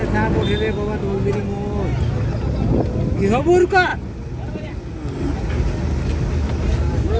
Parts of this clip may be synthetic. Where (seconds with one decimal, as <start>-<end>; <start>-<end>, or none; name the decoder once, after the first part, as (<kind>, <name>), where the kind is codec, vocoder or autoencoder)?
none